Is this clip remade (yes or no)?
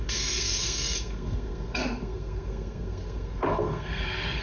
yes